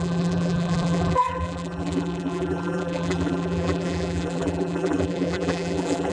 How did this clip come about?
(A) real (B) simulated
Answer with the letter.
B